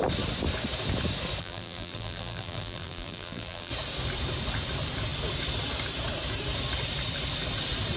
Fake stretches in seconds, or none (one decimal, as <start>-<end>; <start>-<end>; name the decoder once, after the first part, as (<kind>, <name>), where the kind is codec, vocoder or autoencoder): 1.4-3.7 (vocoder, BigVGAN v2)